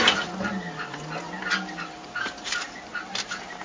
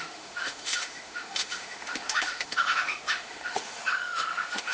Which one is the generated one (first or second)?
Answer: second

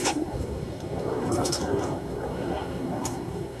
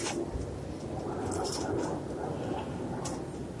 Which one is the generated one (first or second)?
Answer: first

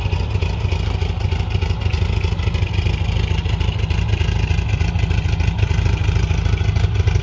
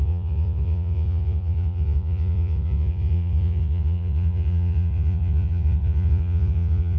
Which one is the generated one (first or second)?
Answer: second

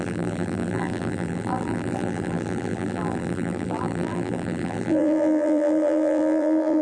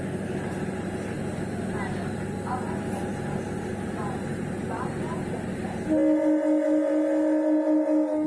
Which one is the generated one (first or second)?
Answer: first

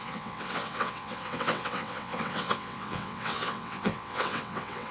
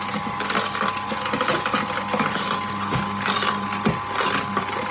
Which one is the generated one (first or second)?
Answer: first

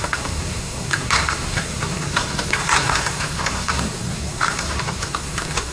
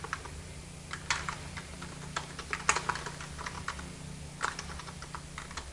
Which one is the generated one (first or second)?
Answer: first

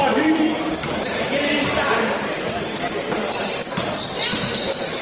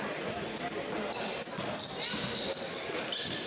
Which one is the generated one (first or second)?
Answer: first